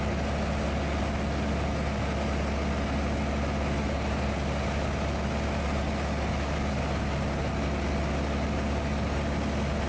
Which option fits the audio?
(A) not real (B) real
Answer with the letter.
B